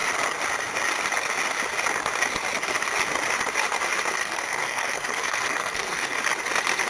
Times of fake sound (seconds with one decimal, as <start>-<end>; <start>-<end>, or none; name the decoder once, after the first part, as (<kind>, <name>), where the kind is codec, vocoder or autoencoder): 4.1-6.2 (codec, SNAC)